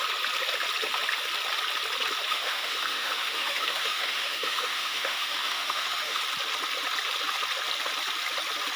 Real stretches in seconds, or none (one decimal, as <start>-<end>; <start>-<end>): 0.0-2.3; 6.2-8.8